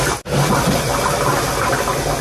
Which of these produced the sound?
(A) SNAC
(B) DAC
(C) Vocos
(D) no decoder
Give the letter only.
D